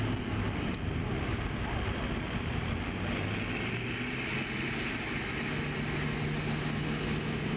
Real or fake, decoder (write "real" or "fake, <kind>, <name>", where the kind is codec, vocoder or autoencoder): real